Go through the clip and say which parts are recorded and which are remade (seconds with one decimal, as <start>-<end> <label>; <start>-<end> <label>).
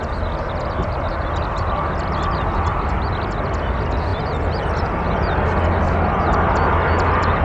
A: 0.0-7.4 recorded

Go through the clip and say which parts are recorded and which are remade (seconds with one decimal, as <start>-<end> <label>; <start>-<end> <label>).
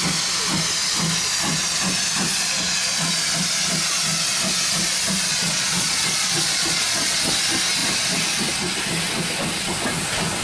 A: 0.0-2.3 recorded; 2.3-3.1 remade; 3.1-5.3 recorded; 5.3-7.2 remade; 7.2-10.4 recorded